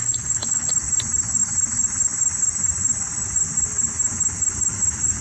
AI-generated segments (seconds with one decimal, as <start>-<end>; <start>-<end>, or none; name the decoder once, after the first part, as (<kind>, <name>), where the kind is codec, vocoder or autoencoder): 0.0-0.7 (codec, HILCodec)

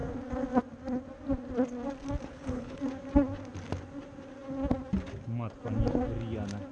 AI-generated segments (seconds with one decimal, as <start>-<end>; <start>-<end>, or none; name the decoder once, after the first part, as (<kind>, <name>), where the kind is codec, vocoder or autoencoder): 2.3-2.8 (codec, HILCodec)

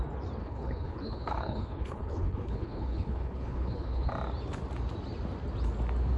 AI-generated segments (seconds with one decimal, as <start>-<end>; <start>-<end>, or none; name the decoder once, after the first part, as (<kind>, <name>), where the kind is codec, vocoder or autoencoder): 0.4-4.1 (codec, HILCodec)